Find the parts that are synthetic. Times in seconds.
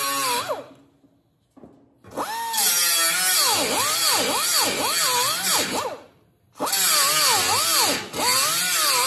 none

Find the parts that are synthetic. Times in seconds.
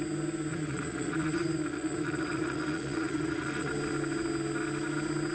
0.5-3.7 (vocoder, Vocos)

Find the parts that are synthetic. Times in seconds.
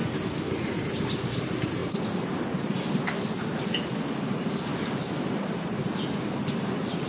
none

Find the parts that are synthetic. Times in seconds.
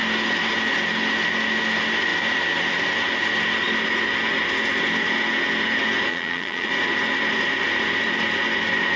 6.1-6.7 (vocoder, Vocos)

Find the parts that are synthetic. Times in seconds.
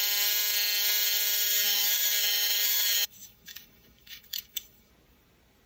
1.5-4.9 (autoencoder, DAC-VAE)